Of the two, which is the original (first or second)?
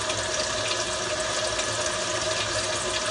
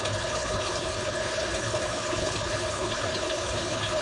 first